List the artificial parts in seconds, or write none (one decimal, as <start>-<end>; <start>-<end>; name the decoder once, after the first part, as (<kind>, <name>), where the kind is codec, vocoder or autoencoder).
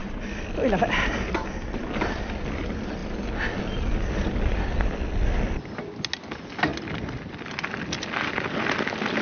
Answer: none